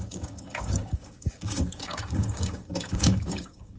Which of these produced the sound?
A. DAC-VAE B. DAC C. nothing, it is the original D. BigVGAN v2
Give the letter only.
B